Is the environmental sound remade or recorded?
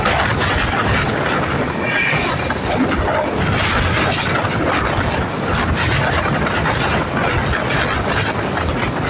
recorded